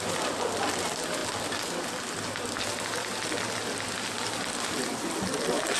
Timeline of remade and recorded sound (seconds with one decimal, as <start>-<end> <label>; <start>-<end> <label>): 0.0-5.8 recorded